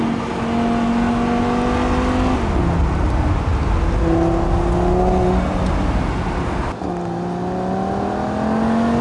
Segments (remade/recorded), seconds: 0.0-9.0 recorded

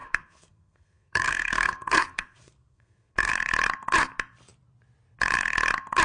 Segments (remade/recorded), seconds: 0.0-3.3 remade; 3.3-6.0 recorded

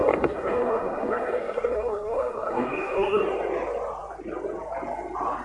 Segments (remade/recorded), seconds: 0.0-3.2 remade; 3.2-5.4 recorded

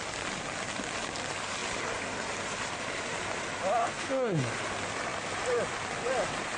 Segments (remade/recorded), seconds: 0.0-3.8 recorded; 3.8-4.5 remade; 4.5-6.6 recorded

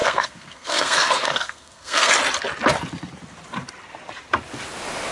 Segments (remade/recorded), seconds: 0.0-2.1 remade; 2.1-5.1 recorded

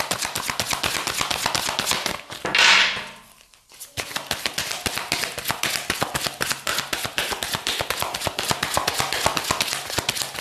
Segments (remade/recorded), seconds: 0.0-10.4 recorded